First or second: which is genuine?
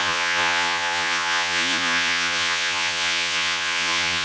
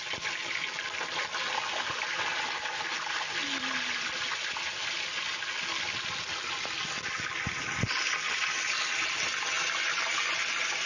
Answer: second